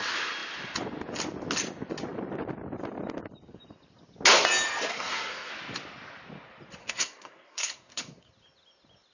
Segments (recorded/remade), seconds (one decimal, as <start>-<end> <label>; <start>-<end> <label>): 0.0-4.9 recorded; 4.9-5.5 remade; 5.5-6.8 recorded; 6.8-8.3 remade; 8.3-9.1 recorded